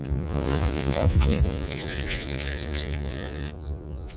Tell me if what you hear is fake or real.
fake